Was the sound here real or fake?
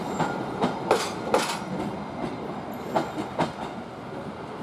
real